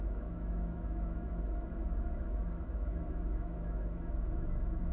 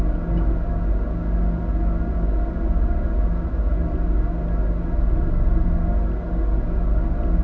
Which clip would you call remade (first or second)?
first